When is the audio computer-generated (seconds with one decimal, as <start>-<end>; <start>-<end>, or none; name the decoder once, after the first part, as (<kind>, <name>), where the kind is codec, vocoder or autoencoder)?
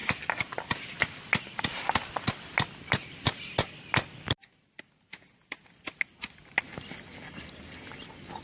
none